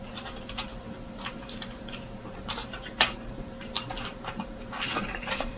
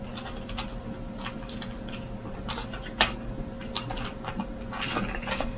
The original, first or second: second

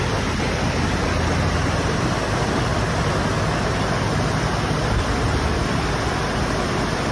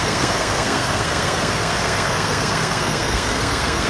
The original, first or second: first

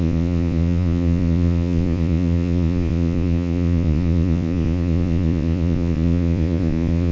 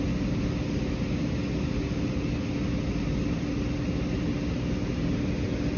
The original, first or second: second